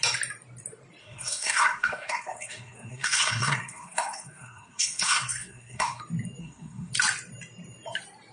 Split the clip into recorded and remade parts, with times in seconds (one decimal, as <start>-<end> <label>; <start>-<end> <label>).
0.0-1.0 recorded; 1.0-6.0 remade; 6.0-6.4 recorded; 6.4-6.9 remade; 6.9-8.3 recorded